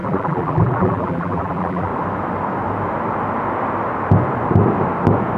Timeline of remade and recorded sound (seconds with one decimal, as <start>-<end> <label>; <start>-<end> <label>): 0.0-1.9 remade; 1.9-5.4 recorded